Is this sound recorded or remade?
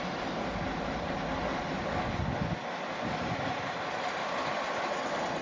recorded